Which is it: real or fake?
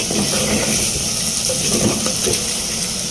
real